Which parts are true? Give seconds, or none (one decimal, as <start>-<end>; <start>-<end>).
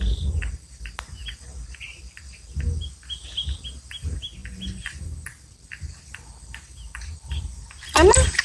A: 0.0-8.4